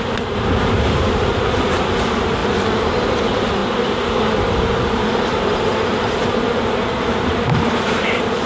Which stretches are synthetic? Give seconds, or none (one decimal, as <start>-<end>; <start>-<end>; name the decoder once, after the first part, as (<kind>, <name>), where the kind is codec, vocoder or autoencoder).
0.0-8.5 (vocoder, BigVGAN v2)